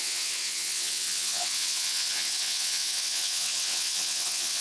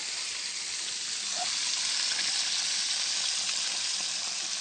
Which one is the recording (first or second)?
second